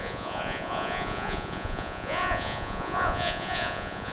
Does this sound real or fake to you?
fake